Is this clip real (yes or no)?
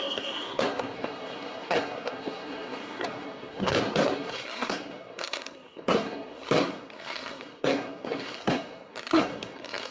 no